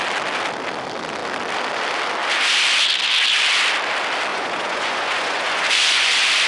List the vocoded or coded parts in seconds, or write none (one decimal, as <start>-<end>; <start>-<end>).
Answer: 4.3-6.1